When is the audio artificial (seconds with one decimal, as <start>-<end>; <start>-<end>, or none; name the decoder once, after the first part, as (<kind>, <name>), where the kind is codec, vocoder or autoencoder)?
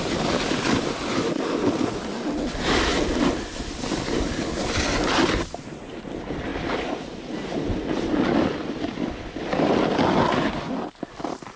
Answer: none